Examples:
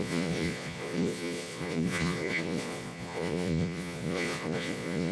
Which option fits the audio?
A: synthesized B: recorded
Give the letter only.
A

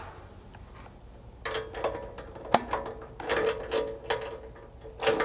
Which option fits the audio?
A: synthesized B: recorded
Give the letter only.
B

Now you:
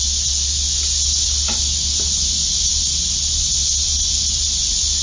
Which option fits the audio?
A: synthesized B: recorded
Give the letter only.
B